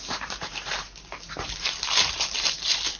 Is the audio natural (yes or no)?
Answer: no